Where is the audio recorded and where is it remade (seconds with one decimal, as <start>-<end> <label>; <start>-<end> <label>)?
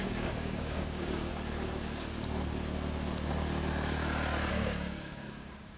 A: 0.0-1.3 remade; 1.3-4.5 recorded; 4.5-5.8 remade